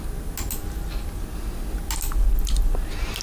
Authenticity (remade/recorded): recorded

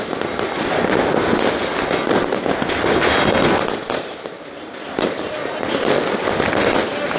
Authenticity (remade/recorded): recorded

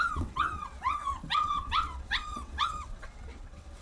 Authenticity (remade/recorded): remade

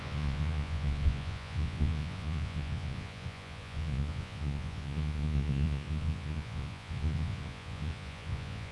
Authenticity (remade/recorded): remade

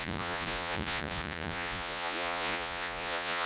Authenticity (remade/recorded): remade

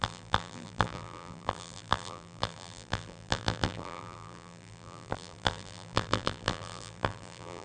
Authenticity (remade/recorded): remade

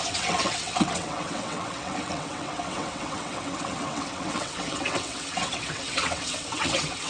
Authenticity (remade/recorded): remade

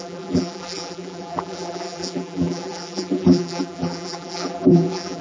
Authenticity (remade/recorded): remade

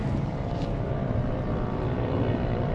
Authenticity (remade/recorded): recorded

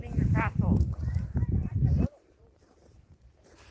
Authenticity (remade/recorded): remade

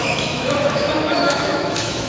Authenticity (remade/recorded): remade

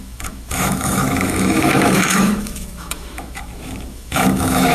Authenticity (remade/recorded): remade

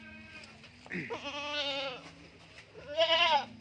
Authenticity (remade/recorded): recorded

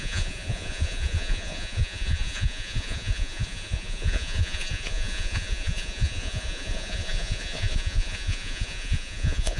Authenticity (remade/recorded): remade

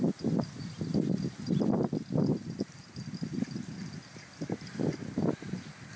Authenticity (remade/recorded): recorded